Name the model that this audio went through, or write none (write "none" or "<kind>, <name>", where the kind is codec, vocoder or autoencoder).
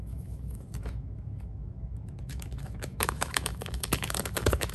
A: autoencoder, DAC-VAE